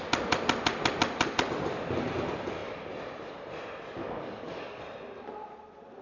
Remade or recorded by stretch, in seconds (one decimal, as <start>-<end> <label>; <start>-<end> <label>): 0.0-4.0 recorded; 4.0-4.8 remade; 4.8-6.0 recorded